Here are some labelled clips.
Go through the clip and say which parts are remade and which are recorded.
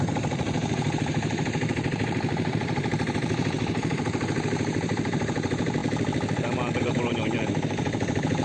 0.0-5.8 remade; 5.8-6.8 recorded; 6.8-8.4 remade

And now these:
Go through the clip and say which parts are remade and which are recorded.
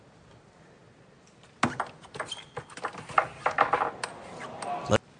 0.0-5.2 recorded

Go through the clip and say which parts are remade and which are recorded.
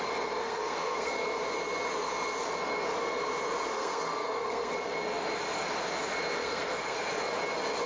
0.0-0.4 recorded; 0.4-1.1 remade; 1.1-3.7 recorded; 3.7-4.7 remade; 4.7-6.4 recorded; 6.4-7.1 remade; 7.1-7.9 recorded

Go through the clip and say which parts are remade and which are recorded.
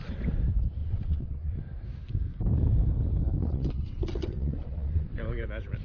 0.0-0.8 recorded; 0.8-1.6 remade; 1.6-3.4 recorded; 3.4-5.2 remade; 5.2-5.8 recorded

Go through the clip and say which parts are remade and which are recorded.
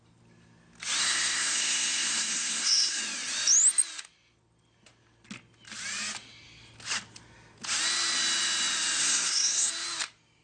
0.0-1.0 recorded; 1.0-3.0 remade; 3.0-9.0 recorded; 9.0-9.7 remade; 9.7-10.4 recorded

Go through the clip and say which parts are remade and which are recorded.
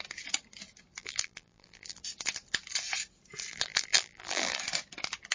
0.0-1.0 recorded; 1.0-2.0 remade; 2.0-3.5 recorded; 3.5-4.6 remade; 4.6-5.3 recorded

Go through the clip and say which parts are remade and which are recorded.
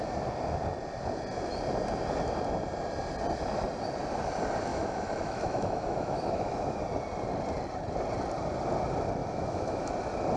0.0-4.7 recorded; 4.7-6.8 remade; 6.8-9.2 recorded; 9.2-9.9 remade; 9.9-10.4 recorded